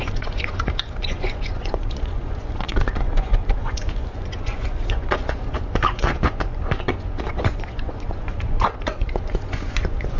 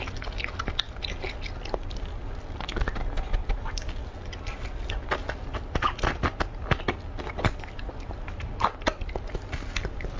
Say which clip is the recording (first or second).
second